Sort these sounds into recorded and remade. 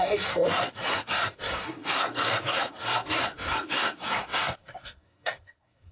remade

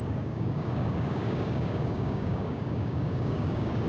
remade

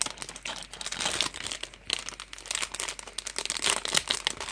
recorded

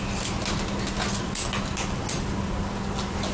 recorded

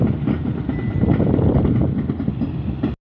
recorded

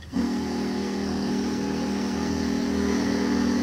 remade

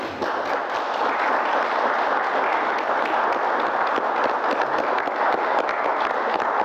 recorded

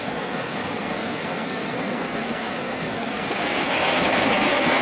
remade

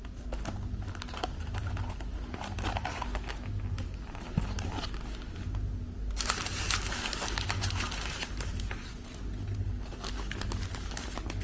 recorded